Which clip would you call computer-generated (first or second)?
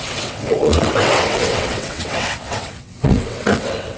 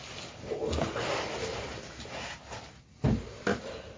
first